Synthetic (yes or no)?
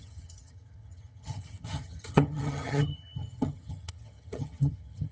yes